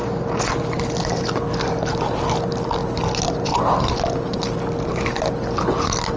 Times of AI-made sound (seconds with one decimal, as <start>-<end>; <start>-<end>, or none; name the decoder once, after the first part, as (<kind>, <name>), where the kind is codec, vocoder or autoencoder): none